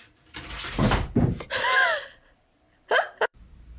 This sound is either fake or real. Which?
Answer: fake